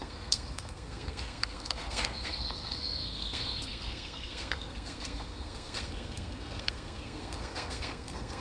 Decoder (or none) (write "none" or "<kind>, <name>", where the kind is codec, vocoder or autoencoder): codec, SNAC